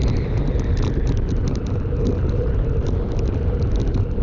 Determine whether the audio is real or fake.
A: fake